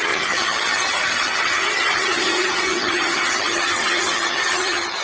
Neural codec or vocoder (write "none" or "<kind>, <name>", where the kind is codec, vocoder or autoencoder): vocoder, HiFi-GAN